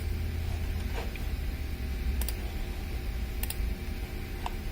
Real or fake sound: real